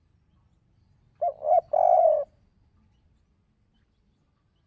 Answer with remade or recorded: remade